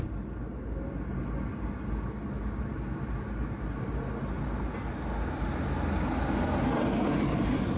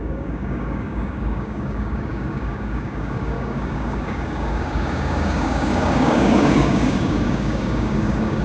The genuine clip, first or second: first